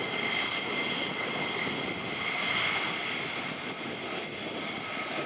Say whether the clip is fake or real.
fake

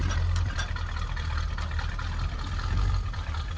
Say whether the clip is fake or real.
fake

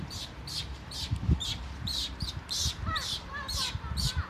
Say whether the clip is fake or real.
fake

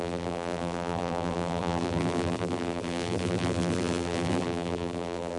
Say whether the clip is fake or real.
fake